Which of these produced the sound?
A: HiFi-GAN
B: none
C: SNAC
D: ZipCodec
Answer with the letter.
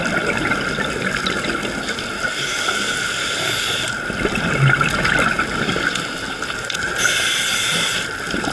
B